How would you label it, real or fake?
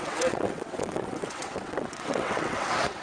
fake